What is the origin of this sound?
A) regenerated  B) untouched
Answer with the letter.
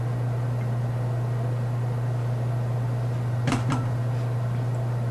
B